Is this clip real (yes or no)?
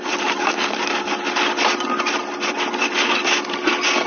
yes